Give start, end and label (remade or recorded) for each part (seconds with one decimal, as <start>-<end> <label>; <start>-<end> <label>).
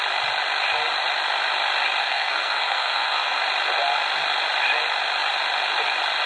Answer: 0.0-2.0 recorded; 2.0-3.4 remade; 3.4-6.3 recorded